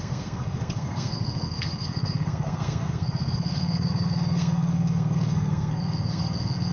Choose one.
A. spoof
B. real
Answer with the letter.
A